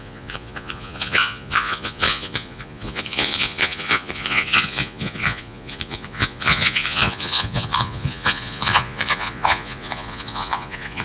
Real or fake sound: fake